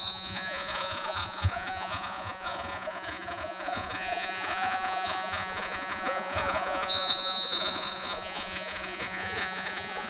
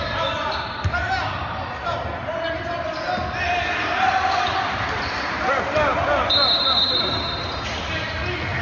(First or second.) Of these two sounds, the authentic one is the second